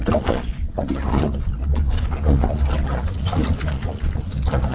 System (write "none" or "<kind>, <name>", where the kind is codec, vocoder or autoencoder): vocoder, Vocos